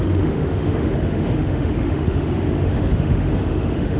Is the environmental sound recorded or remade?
remade